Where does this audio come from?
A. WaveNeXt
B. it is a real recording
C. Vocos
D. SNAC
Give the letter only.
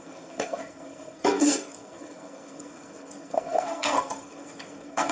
D